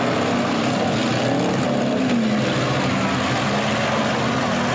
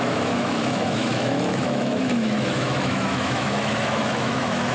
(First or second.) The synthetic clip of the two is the second